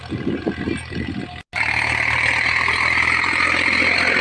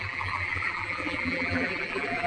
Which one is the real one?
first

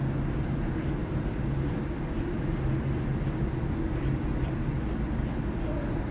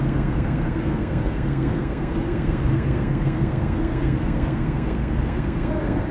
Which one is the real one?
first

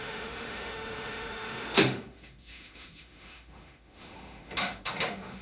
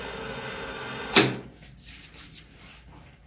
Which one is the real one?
second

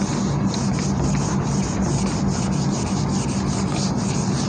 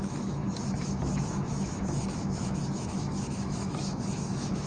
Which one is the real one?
first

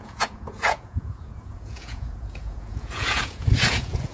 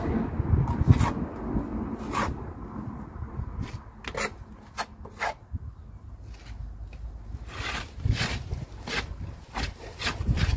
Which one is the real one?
second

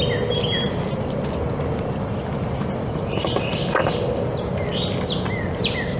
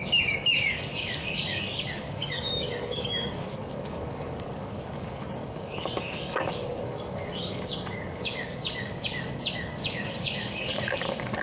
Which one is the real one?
first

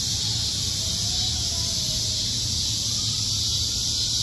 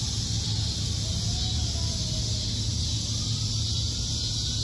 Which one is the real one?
second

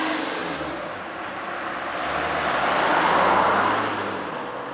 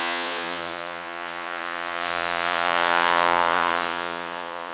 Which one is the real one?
first